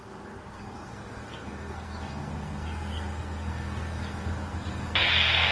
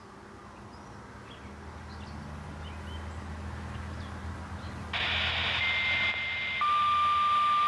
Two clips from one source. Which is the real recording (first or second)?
second